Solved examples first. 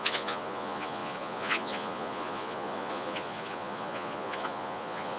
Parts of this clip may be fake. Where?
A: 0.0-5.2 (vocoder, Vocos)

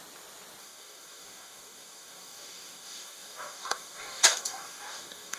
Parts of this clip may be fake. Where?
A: 0.6-5.4 (codec, DAC)

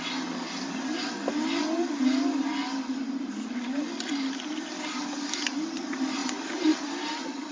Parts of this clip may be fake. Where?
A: 6.2-6.9 (vocoder, BigVGAN v2)

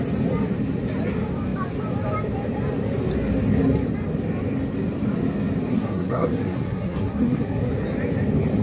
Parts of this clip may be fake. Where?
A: 5.7-7.7 (codec, SNAC)

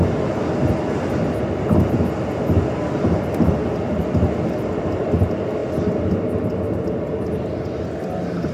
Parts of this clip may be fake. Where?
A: none

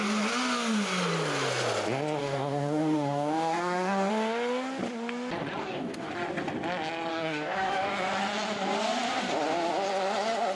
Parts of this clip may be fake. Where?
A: 2.2-4.1 (codec, DAC); 5.6-6.1; 7.1-7.9

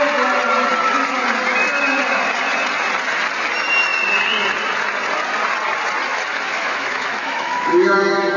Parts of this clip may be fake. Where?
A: 6.1-8.0 (autoencoder, DAC-VAE)

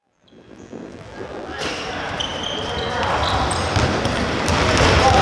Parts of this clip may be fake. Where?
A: 0.0-1.6 (vocoder, BigVGAN v2)